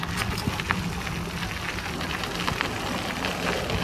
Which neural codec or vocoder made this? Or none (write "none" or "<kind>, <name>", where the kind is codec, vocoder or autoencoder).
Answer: none